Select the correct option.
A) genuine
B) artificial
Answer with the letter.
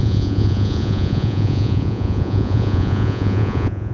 B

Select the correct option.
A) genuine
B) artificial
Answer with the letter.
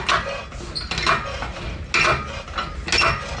A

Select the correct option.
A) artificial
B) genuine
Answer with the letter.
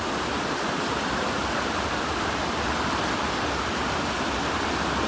B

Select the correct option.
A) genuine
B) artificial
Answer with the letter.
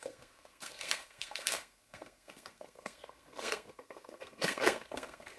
B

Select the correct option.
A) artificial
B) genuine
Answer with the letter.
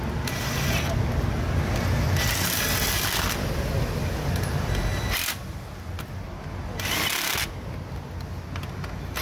B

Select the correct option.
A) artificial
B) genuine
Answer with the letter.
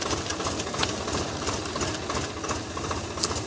B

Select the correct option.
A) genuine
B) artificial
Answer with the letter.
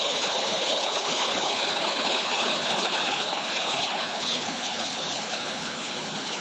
B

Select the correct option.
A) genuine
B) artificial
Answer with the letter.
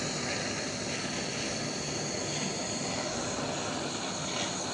A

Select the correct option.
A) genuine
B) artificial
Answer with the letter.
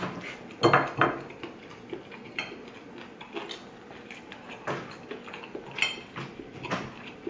A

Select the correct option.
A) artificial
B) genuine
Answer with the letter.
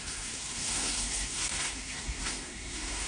A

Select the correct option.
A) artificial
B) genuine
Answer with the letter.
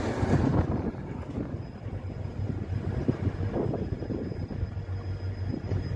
B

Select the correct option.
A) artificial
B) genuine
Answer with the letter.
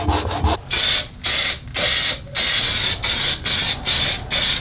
B